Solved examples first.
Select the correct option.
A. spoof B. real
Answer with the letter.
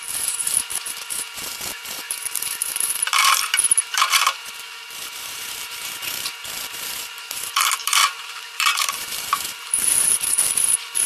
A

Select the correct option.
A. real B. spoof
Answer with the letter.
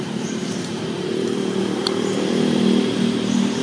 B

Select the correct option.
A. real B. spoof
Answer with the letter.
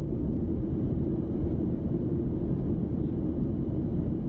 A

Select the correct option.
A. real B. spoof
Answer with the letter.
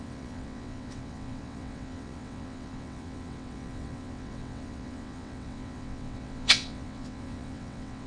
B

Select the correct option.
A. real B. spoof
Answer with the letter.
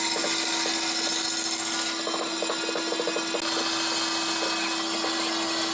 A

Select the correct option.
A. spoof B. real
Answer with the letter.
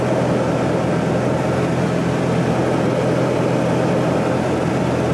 B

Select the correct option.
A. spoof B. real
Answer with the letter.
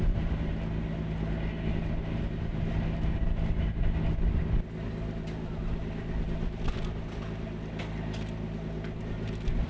B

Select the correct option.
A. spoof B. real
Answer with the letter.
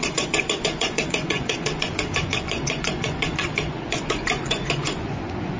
A